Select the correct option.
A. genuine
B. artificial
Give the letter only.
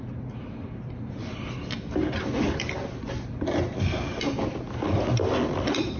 A